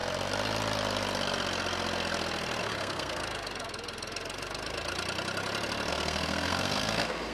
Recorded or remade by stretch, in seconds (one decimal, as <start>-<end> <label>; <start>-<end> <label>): 0.0-2.6 recorded; 2.6-3.2 remade; 3.2-5.9 recorded; 5.9-7.3 remade